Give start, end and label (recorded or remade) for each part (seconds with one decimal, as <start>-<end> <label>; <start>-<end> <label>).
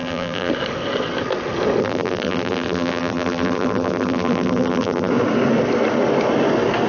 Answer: 0.0-0.5 remade; 0.5-1.8 recorded; 1.8-5.1 remade; 5.1-6.9 recorded